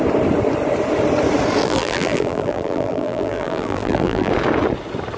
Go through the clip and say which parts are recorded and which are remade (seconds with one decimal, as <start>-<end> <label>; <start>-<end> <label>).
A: 0.0-1.6 recorded; 1.6-4.3 remade; 4.3-5.2 recorded